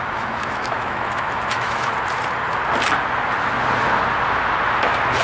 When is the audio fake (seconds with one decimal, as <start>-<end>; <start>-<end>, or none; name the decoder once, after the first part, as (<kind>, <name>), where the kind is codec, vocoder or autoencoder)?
0.0-1.9 (autoencoder, DAC-VAE)